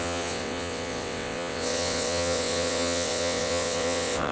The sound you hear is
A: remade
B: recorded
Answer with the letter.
A